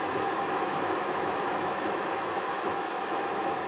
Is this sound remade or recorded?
remade